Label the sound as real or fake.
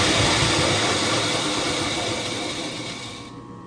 real